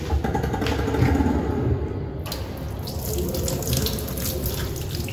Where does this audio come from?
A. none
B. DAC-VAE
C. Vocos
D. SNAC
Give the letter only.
A